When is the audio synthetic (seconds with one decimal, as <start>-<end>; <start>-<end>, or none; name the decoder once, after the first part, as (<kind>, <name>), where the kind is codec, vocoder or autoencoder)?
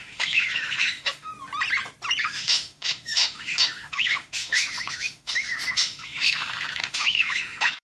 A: 0.0-1.3 (autoencoder, DAC-VAE); 2.2-7.8